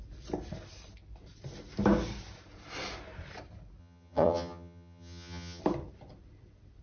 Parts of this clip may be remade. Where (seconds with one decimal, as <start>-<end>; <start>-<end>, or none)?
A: 3.8-5.6